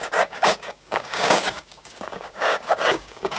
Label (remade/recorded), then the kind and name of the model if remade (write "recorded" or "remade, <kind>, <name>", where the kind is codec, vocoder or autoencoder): remade, codec, DAC